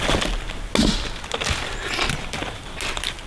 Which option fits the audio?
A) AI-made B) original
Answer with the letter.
B